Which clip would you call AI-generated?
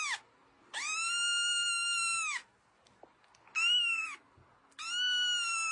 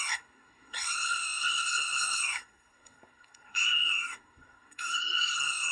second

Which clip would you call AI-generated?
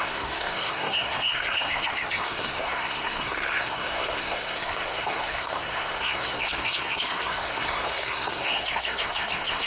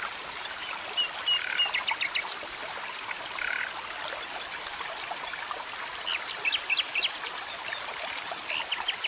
first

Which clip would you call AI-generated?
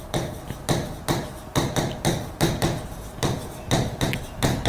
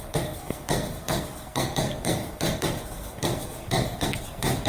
second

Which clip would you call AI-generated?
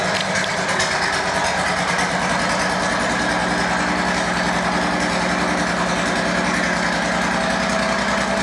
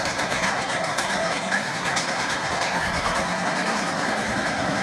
second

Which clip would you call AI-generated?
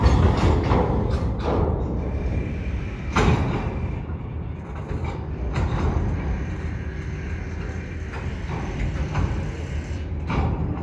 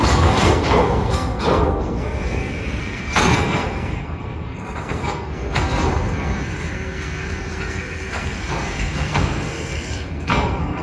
second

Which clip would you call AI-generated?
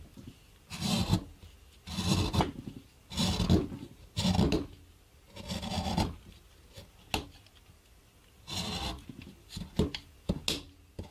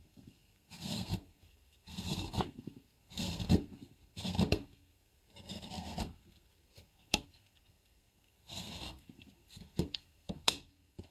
second